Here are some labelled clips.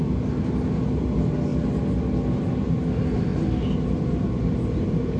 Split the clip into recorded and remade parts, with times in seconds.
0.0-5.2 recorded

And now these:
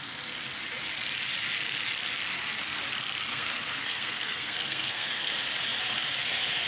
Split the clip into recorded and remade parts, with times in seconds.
0.0-3.3 recorded; 3.3-5.3 remade; 5.3-6.7 recorded

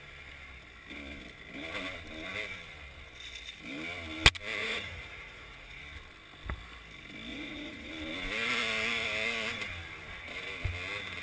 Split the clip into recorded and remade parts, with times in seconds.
0.0-4.6 recorded; 4.6-5.8 remade; 5.8-7.3 recorded; 7.3-7.9 remade; 7.9-11.2 recorded